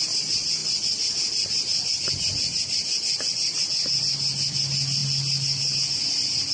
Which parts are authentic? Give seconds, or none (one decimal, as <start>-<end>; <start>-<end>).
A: 0.0-6.5